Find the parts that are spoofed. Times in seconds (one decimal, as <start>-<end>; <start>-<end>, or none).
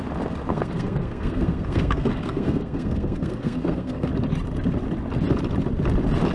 0.5-4.1